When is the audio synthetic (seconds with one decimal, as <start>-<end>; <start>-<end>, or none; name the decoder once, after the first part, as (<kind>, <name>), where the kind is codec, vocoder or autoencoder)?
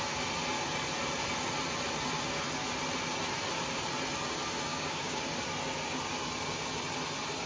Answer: 4.7-5.2 (codec, DAC)